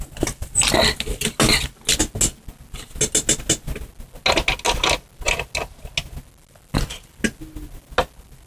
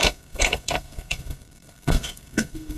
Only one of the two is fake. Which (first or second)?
second